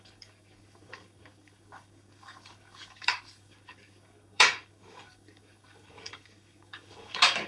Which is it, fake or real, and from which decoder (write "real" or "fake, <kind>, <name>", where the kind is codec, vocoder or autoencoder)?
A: fake, codec, DAC